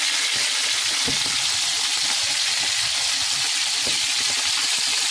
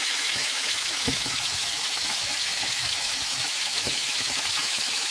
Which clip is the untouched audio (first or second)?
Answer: first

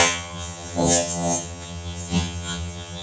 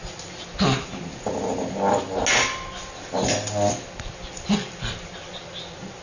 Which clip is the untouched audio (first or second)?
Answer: second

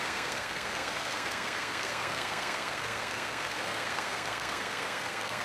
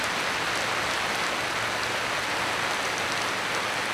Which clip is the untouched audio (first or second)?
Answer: second